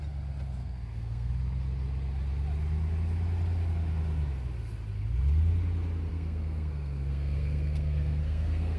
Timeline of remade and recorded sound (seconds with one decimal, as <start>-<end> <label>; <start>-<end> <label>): 0.0-0.6 recorded; 0.6-1.3 remade; 1.3-6.1 recorded; 6.1-8.8 remade